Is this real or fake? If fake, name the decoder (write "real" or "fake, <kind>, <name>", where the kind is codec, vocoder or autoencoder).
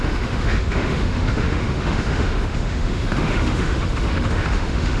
fake, autoencoder, DAC-VAE